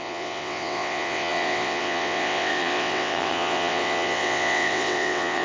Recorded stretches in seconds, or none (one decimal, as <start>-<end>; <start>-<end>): none